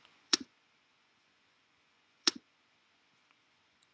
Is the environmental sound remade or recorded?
remade